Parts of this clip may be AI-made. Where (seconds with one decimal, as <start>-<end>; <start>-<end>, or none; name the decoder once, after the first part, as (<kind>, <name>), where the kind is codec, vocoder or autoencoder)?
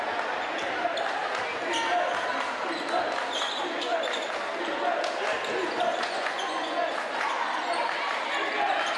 5.9-7.1 (vocoder, Vocos)